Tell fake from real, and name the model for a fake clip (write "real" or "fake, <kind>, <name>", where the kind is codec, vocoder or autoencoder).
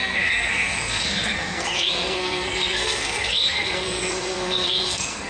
fake, codec, SNAC